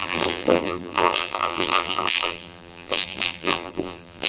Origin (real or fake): fake